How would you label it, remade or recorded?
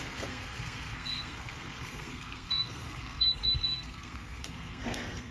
remade